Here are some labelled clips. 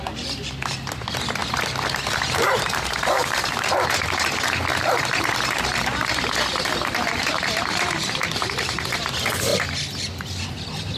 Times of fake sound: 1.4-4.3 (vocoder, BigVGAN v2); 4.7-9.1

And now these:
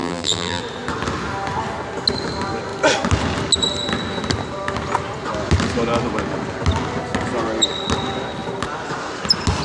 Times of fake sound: 0.0-0.6 (vocoder, BigVGAN v2)

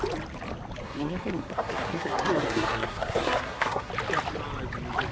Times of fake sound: 0.8-3.9 (codec, SNAC)

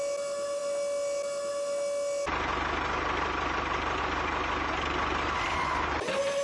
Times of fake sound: none